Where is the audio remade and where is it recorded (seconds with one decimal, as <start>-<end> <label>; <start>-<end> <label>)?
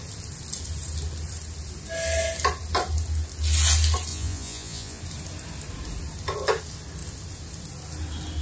0.0-4.1 recorded; 4.1-5.0 remade; 5.0-8.4 recorded